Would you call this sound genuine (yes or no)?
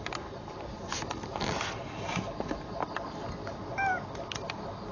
yes